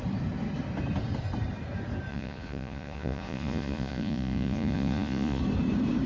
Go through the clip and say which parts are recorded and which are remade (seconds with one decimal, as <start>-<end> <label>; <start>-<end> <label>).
0.0-2.1 recorded; 2.1-5.4 remade; 5.4-6.1 recorded